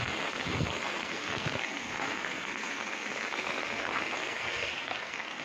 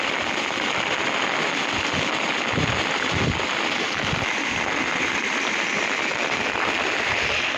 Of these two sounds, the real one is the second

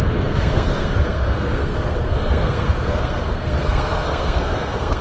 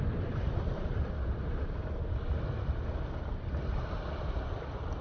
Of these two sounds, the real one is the second